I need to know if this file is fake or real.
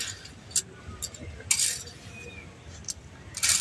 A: real